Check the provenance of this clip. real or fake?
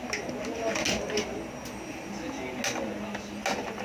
real